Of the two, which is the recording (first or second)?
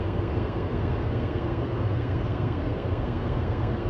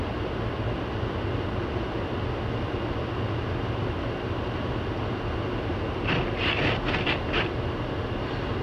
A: second